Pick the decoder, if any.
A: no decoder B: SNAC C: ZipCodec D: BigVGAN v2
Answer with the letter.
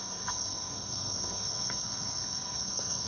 B